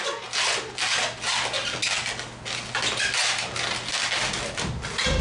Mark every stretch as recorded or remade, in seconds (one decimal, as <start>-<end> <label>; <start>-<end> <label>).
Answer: 0.0-5.2 recorded